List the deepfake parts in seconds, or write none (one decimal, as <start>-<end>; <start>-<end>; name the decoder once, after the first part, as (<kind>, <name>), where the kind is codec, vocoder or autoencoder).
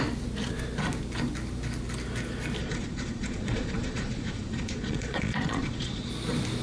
2.6-6.1 (vocoder, Vocos)